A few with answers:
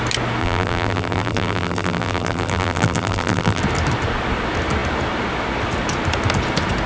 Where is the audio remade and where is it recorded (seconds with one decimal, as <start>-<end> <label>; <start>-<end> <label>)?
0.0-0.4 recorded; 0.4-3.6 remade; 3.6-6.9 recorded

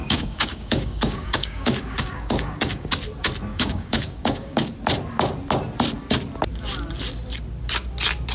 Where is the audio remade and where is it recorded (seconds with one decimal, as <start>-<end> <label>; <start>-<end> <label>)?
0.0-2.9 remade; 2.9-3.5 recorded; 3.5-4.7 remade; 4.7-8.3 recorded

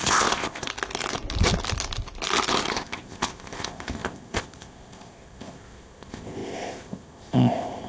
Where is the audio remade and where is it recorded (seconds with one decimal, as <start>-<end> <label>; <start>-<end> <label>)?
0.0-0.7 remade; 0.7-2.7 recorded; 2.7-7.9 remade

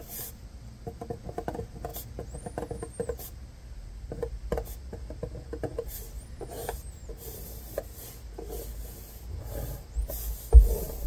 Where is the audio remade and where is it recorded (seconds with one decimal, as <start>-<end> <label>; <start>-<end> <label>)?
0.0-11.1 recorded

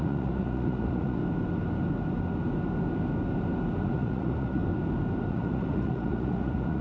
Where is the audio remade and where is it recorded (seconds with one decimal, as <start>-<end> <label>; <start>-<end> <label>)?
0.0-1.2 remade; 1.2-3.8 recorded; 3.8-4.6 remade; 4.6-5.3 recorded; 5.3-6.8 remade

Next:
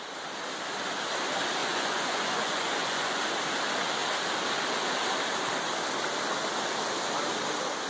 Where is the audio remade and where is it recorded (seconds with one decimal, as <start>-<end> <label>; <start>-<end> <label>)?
0.0-1.6 recorded; 1.6-3.2 remade; 3.2-7.9 recorded